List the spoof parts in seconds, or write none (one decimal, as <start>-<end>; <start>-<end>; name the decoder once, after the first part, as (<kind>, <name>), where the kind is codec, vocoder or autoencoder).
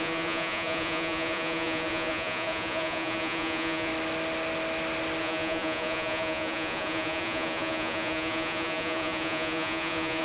0.0-3.9 (vocoder, Vocos); 5.2-10.2